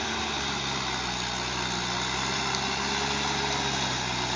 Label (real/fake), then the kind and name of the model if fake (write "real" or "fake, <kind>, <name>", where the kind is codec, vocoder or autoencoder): real